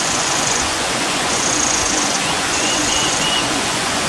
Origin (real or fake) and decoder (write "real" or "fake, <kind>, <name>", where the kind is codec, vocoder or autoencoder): fake, vocoder, Vocos